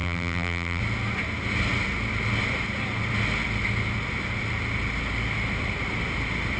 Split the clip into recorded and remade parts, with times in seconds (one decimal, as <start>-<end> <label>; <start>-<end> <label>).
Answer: 0.0-0.8 remade; 0.8-6.6 recorded